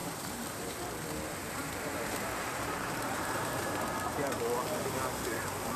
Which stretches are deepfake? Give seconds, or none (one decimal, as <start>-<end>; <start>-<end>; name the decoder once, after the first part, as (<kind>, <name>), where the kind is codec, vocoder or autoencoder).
0.0-0.9 (vocoder, BigVGAN v2); 1.4-4.4